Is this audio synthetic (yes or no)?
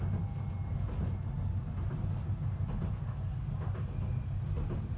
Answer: no